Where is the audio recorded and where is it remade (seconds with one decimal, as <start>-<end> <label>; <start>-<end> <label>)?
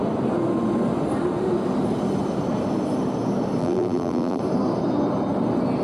0.0-3.6 recorded; 3.6-4.4 remade; 4.4-5.8 recorded